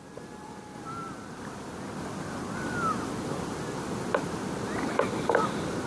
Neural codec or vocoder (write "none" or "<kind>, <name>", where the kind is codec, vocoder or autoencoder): none